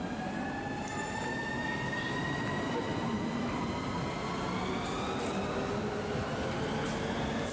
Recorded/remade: recorded